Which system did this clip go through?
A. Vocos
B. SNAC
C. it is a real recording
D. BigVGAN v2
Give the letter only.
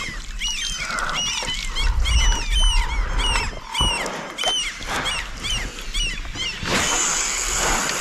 C